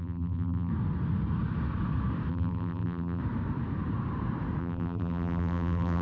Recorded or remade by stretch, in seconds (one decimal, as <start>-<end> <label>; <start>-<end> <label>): 0.0-0.7 remade; 0.7-2.3 recorded; 2.3-3.2 remade; 3.2-4.6 recorded; 4.6-6.0 remade